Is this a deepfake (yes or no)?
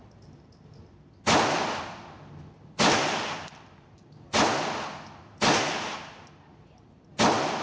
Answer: no